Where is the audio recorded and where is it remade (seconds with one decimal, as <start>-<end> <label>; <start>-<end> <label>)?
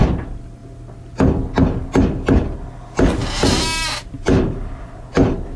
0.0-5.6 recorded